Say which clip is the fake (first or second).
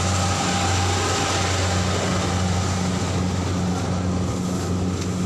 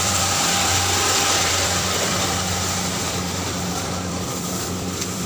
second